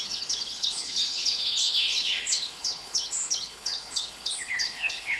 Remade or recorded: remade